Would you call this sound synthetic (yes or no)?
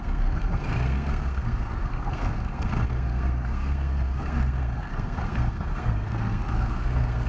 yes